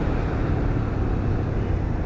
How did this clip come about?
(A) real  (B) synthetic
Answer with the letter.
A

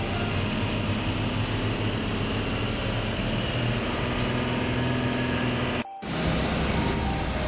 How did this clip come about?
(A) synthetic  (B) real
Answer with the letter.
B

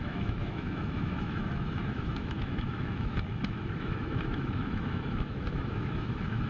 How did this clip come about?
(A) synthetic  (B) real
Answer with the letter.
A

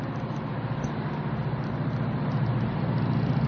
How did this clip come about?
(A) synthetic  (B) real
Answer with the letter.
B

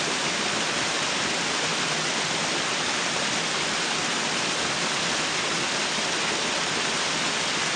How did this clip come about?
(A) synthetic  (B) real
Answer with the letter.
B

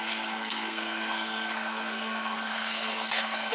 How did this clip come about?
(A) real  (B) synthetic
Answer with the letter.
B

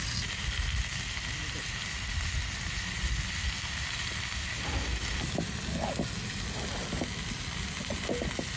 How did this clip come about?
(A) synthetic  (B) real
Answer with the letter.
B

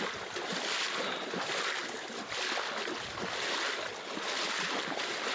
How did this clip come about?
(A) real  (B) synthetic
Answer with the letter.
A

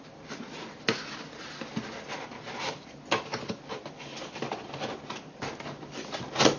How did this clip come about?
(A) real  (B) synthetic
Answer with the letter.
A